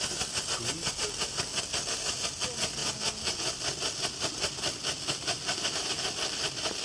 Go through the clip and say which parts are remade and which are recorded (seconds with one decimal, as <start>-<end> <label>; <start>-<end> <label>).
0.0-6.8 recorded